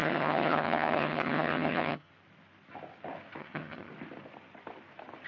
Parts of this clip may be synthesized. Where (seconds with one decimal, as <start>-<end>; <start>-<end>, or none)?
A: 0.0-2.1; 3.4-3.9